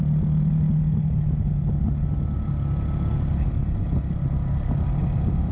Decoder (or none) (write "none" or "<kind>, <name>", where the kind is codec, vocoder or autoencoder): none